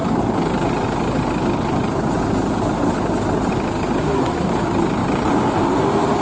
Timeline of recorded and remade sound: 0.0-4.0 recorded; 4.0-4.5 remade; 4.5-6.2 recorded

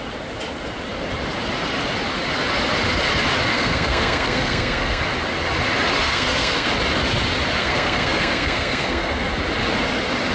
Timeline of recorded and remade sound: 0.0-3.5 recorded; 3.5-5.0 remade; 5.0-6.0 recorded; 6.0-6.7 remade; 6.7-7.6 recorded; 7.6-9.3 remade; 9.3-10.3 recorded

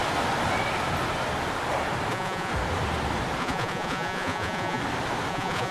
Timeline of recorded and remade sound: 0.0-2.1 recorded; 2.1-2.5 remade; 2.5-3.4 recorded; 3.4-4.8 remade; 4.8-5.3 recorded; 5.3-5.7 remade

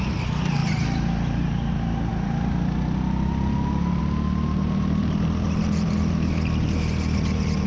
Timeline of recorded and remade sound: 0.0-7.7 recorded

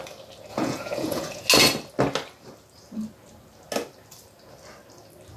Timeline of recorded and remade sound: 0.0-0.5 recorded; 0.5-1.5 remade; 1.5-5.4 recorded

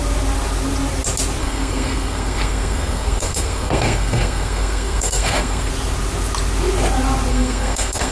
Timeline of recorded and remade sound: 0.0-1.4 recorded; 1.4-5.7 remade; 5.7-7.3 recorded; 7.3-8.1 remade